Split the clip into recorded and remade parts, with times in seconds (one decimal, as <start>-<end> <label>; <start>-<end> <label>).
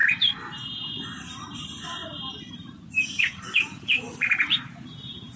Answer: 0.0-0.9 remade; 0.9-2.0 recorded; 2.0-5.4 remade